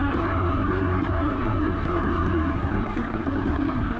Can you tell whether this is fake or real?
fake